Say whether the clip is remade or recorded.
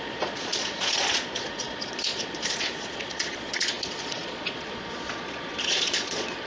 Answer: remade